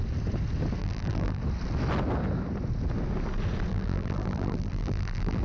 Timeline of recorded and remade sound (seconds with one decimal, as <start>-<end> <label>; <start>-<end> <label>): 0.0-0.8 recorded; 0.8-1.4 remade; 1.4-3.7 recorded; 3.7-5.4 remade